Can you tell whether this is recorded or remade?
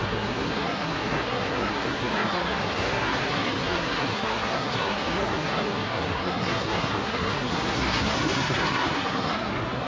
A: remade